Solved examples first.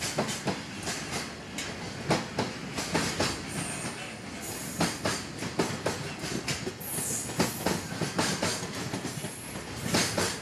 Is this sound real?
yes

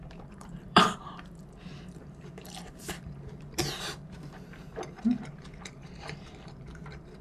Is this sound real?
no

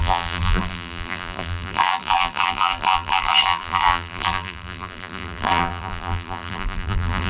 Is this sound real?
no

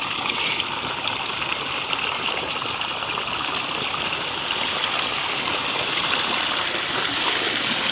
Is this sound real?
yes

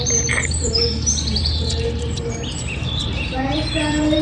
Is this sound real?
no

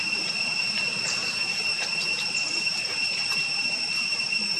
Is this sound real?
no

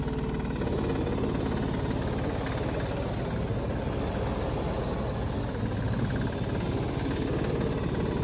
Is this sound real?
yes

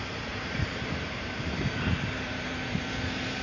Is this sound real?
no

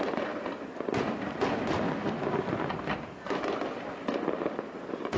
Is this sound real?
yes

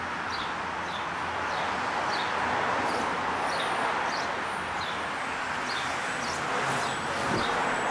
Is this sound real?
yes